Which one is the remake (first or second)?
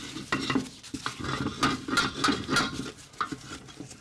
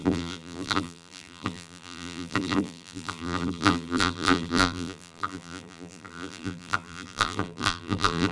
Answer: second